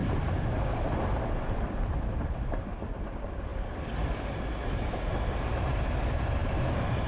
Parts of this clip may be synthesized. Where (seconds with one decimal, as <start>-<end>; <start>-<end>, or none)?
0.0-3.5; 5.3-7.1